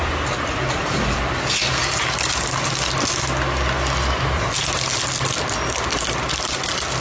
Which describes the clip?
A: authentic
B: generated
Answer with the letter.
A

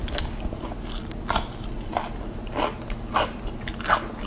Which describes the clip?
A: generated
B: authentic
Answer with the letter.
B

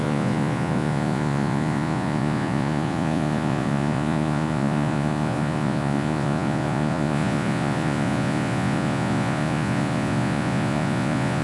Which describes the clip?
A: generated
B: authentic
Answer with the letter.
A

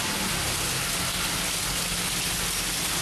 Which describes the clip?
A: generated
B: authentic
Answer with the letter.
B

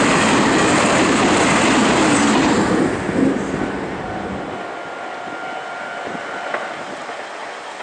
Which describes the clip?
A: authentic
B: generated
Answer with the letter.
A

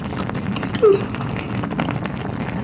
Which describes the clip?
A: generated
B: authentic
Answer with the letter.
B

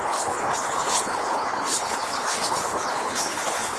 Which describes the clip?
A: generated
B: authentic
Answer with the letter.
A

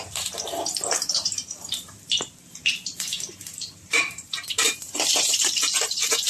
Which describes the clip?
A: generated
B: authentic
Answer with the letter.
A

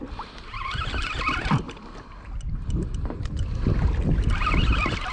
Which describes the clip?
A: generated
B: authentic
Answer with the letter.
B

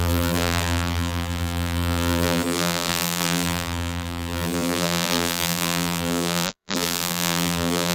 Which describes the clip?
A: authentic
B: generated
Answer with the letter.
B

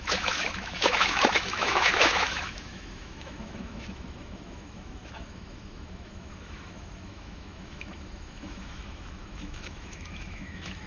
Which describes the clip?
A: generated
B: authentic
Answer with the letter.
A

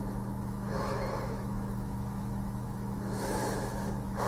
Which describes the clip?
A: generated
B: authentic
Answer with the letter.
A